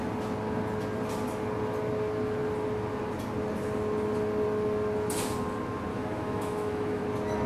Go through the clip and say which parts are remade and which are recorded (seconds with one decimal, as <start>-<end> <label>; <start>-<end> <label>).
0.0-5.9 recorded; 5.9-7.0 remade; 7.0-7.5 recorded